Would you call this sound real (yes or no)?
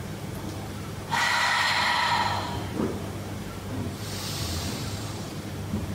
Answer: no